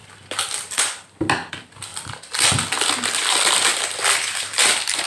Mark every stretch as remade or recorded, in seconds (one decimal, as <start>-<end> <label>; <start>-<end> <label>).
0.0-5.1 recorded